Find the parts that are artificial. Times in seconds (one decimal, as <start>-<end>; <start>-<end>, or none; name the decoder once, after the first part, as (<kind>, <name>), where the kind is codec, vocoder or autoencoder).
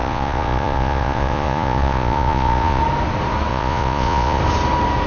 0.0-2.8 (vocoder, Vocos); 3.5-4.4